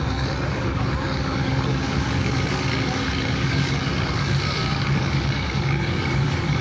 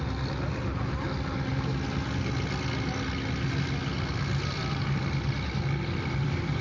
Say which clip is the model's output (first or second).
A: first